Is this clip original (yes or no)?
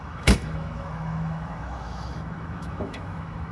no